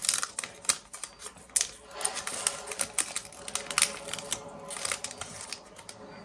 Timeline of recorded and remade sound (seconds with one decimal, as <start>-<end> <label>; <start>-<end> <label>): 0.0-6.2 recorded